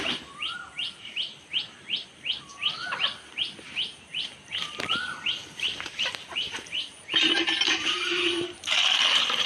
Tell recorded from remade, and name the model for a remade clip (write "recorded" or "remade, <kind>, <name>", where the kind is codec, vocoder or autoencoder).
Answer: remade, vocoder, BigVGAN v2